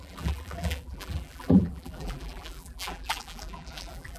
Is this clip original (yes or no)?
no